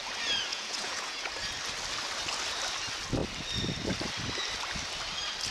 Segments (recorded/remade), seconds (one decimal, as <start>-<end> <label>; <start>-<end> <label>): 0.0-0.5 recorded; 0.5-1.3 remade; 1.3-5.5 recorded